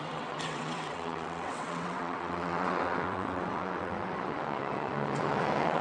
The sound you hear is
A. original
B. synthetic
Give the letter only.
B